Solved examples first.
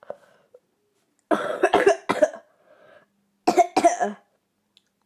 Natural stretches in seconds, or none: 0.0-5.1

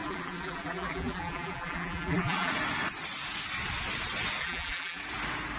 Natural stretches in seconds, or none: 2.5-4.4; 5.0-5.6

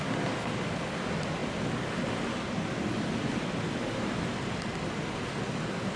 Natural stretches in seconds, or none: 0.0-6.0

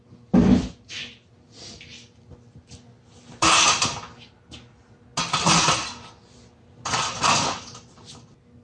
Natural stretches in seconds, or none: 0.0-8.6